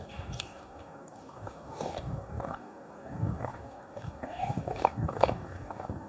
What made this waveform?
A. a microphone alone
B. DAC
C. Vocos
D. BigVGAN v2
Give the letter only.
B